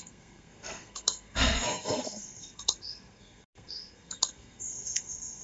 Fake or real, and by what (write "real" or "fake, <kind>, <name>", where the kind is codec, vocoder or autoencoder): fake, codec, SNAC